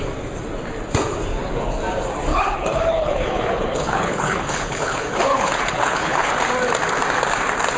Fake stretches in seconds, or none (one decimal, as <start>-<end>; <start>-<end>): 2.3-6.3